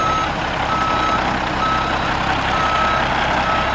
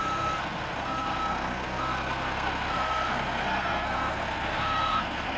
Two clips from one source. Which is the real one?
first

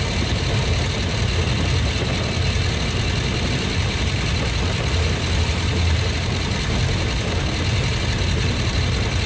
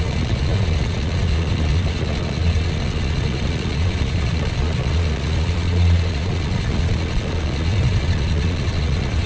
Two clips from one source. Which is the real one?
first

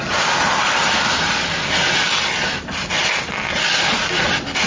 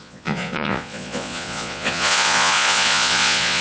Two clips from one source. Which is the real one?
first